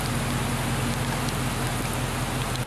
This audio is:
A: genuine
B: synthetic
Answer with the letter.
A